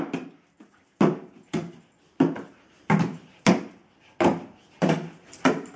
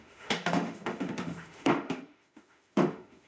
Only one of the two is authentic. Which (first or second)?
first